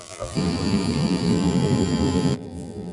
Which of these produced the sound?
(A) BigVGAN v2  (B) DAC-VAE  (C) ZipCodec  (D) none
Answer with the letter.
A